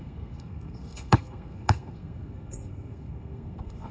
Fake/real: fake